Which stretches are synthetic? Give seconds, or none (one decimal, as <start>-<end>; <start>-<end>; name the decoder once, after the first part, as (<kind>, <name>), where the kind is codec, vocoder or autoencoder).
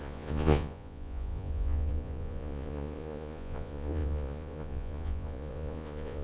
0.0-6.2 (vocoder, Vocos)